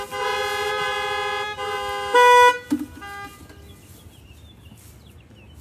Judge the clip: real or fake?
real